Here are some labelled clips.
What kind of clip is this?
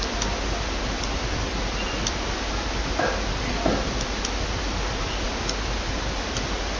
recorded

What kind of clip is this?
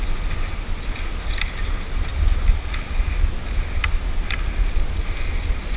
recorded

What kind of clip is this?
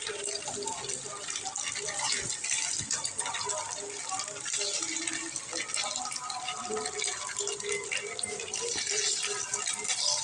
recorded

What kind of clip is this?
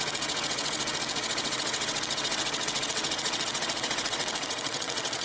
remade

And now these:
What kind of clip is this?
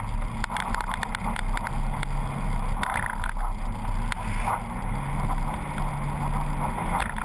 recorded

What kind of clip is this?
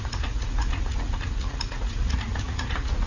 remade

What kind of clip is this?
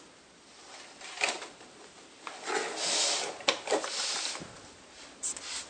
recorded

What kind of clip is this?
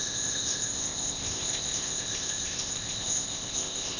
remade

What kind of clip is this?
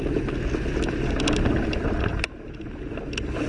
recorded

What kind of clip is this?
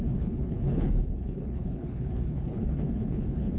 remade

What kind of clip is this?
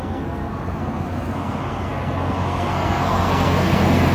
remade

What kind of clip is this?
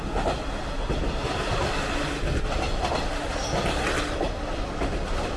recorded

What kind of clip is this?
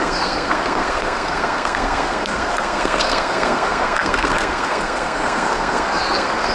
remade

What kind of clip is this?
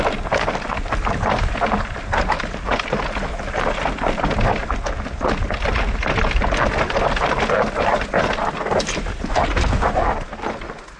recorded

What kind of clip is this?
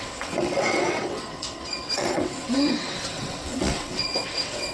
remade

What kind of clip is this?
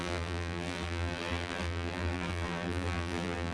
remade